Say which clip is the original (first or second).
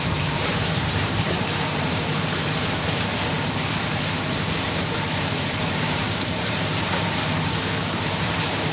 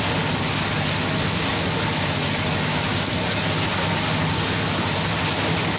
second